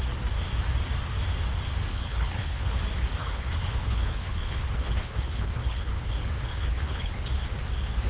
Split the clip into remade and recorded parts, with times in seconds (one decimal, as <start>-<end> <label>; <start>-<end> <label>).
0.0-1.9 recorded; 1.9-2.8 remade; 2.8-3.2 recorded; 3.2-6.1 remade; 6.1-6.5 recorded; 6.5-7.1 remade; 7.1-8.1 recorded